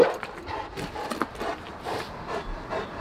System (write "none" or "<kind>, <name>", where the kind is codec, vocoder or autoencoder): none